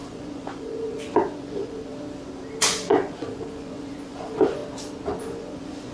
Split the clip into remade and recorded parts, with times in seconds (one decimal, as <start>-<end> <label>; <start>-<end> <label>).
0.0-1.9 remade; 1.9-2.6 recorded; 2.6-4.6 remade; 4.6-5.2 recorded; 5.2-5.9 remade